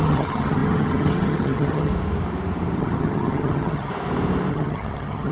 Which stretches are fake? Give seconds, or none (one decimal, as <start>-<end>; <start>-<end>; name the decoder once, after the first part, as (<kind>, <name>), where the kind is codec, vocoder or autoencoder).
0.0-1.9 (vocoder, HiFi-GAN); 2.8-3.9; 4.5-5.3